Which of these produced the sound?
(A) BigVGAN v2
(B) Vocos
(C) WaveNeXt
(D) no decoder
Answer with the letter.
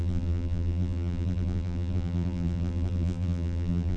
A